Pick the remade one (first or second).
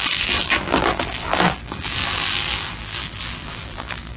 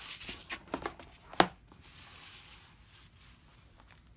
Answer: first